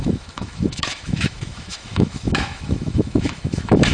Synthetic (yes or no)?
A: yes